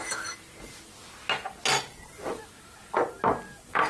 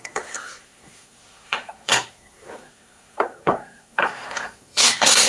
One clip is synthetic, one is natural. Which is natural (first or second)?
first